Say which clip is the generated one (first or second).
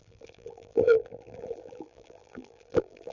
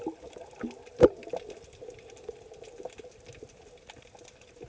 first